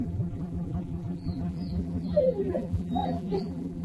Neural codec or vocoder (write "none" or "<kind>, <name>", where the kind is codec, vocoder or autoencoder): vocoder, BigVGAN v2